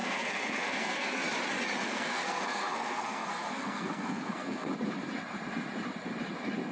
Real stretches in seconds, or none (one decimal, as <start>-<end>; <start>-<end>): 1.2-1.8; 4.7-6.7